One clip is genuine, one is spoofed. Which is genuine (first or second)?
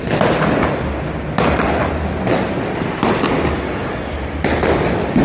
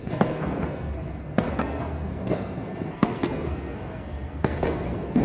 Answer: first